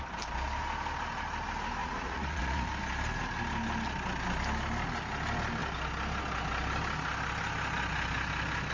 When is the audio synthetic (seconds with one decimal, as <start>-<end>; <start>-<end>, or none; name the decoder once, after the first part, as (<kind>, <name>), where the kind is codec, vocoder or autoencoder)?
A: 1.8-2.7 (vocoder, Vocos)